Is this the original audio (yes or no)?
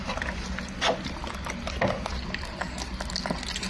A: yes